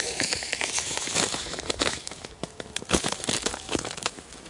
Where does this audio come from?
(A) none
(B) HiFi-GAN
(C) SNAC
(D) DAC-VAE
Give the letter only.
D